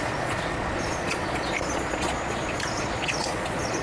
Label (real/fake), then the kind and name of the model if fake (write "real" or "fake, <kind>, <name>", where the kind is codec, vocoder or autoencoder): fake, vocoder, Vocos